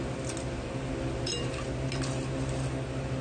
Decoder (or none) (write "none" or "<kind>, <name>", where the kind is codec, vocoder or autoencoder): none